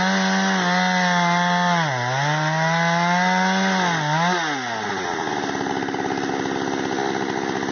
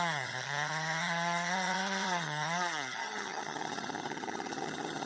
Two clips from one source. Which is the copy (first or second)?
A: second